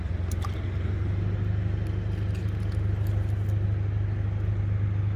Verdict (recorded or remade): recorded